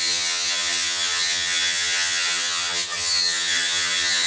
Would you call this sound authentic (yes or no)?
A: no